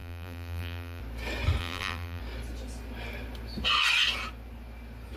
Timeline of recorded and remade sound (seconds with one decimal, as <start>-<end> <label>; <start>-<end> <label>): 0.0-1.0 remade; 1.0-1.6 recorded; 1.6-2.2 remade; 2.2-5.2 recorded